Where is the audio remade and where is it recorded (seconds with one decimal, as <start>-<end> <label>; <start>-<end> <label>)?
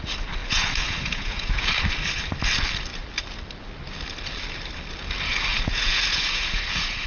0.0-0.4 recorded; 0.4-1.8 remade; 1.8-5.5 recorded; 5.5-7.1 remade